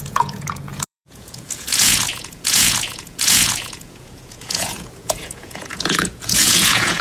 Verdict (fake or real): fake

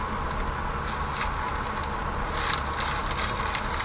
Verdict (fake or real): real